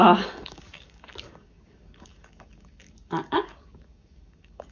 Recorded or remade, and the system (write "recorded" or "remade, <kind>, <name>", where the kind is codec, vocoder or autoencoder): remade, codec, DAC